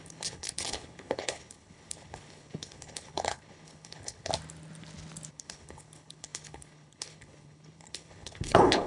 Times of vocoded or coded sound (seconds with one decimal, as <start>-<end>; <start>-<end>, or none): 0.0-4.3; 5.3-8.9